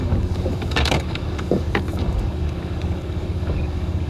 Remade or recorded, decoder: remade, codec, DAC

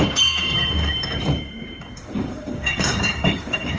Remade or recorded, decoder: remade, codec, DAC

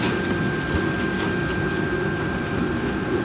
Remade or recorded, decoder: recorded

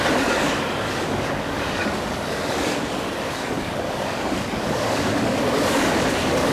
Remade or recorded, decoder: remade, codec, DAC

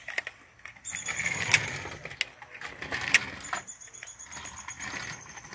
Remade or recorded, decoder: recorded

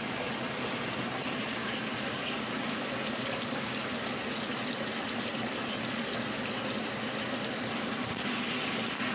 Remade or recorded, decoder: recorded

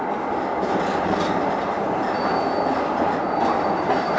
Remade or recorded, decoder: recorded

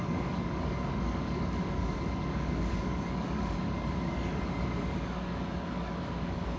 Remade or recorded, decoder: remade, codec, DAC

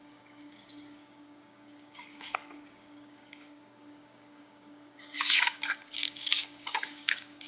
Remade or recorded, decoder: remade, codec, DAC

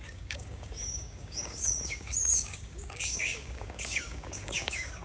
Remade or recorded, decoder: remade, codec, DAC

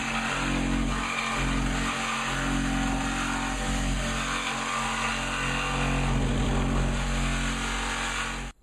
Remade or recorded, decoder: recorded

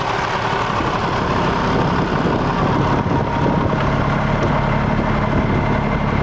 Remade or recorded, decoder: recorded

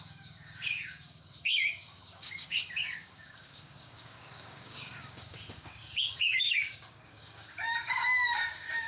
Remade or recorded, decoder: remade, codec, DAC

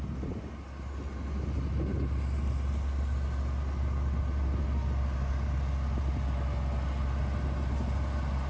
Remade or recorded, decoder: recorded